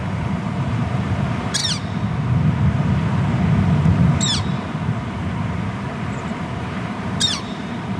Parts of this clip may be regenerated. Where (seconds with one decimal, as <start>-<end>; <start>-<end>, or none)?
0.0-1.6; 6.4-8.0